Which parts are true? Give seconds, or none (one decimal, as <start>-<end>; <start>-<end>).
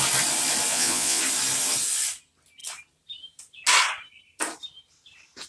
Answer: 0.0-0.7; 1.2-5.5